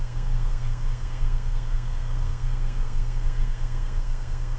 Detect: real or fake fake